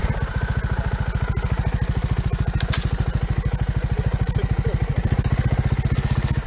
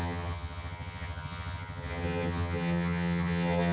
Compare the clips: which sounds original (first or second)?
first